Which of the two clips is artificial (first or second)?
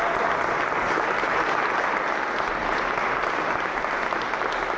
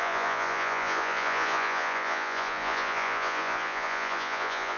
second